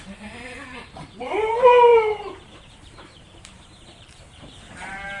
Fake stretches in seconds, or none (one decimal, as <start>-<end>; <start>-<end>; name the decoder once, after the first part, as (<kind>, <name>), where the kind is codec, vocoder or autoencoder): 1.9-5.2 (vocoder, BigVGAN v2)